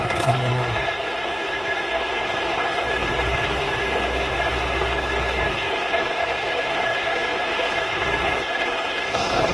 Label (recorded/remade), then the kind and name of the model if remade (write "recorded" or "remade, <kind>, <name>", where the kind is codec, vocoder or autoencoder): remade, codec, SNAC